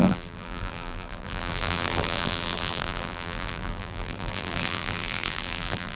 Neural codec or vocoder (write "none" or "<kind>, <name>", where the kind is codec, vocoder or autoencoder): vocoder, BigVGAN v2